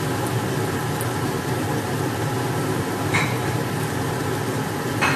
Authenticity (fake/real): real